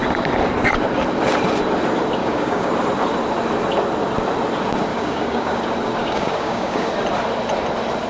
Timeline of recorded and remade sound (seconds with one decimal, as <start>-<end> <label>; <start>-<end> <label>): 0.0-2.2 recorded; 2.2-2.7 remade; 2.7-4.9 recorded; 4.9-5.6 remade; 5.6-6.0 recorded; 6.0-6.9 remade; 6.9-8.1 recorded

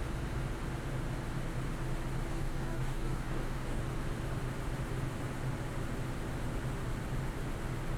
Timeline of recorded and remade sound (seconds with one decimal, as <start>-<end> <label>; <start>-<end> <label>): 0.0-2.3 recorded; 2.3-3.8 remade; 3.8-8.0 recorded

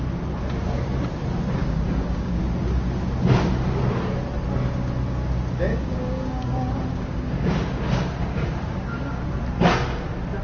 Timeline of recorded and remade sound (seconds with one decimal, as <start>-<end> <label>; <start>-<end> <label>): 0.0-1.6 recorded; 1.6-2.4 remade; 2.4-5.7 recorded; 5.7-7.5 remade; 7.5-8.2 recorded; 8.2-9.2 remade; 9.2-10.4 recorded